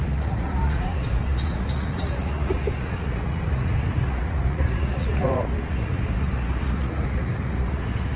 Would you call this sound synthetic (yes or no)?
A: yes